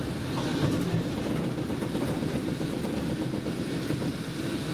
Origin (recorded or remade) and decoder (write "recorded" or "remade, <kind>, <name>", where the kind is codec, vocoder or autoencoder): recorded